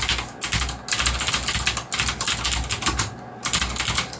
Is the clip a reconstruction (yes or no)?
no